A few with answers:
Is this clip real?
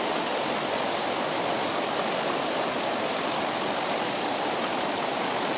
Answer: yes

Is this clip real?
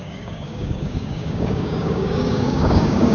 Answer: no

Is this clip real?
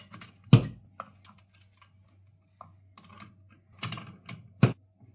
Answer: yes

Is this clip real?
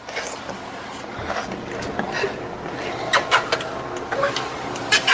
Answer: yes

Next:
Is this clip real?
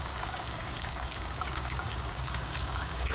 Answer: no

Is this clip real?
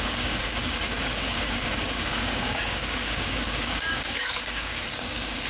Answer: no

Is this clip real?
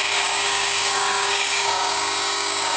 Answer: no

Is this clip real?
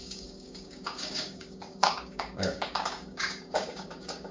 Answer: no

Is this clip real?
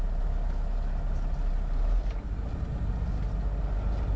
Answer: yes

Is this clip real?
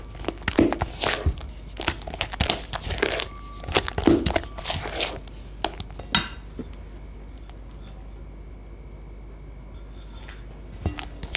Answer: yes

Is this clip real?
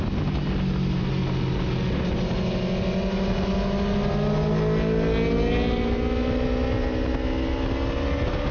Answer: yes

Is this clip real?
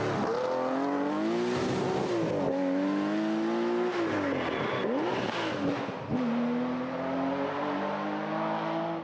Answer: yes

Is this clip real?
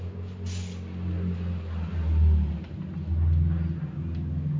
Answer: yes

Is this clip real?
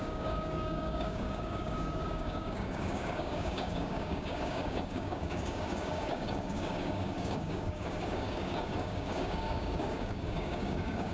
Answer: no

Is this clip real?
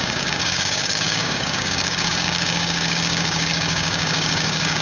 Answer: no